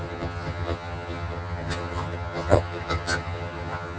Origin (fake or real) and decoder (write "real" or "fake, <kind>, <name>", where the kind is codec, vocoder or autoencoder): fake, vocoder, HiFi-GAN